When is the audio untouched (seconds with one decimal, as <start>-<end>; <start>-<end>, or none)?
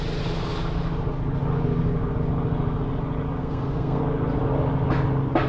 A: 0.0-3.4; 4.0-5.5